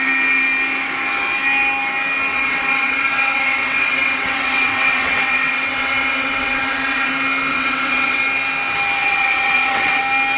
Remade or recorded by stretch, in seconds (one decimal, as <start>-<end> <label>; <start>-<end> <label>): 0.0-2.3 recorded; 2.3-7.1 remade; 7.1-7.5 recorded; 7.5-8.2 remade; 8.2-9.0 recorded; 9.0-10.0 remade; 10.0-10.4 recorded